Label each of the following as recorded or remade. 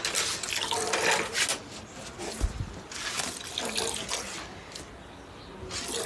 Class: recorded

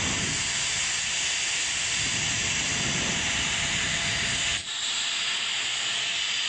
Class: recorded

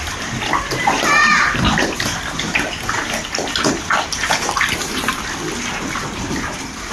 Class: recorded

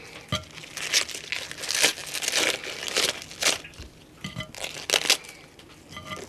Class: recorded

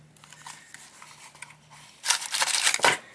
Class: recorded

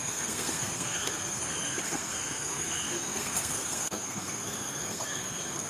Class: remade